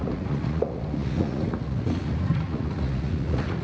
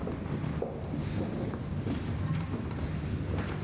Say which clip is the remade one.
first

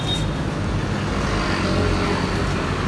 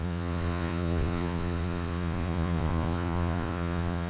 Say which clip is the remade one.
second